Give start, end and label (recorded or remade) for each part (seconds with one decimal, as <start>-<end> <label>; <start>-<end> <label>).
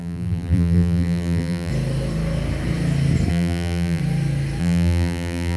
0.0-1.7 remade; 1.7-3.3 recorded; 3.3-4.0 remade; 4.0-4.6 recorded; 4.6-5.6 remade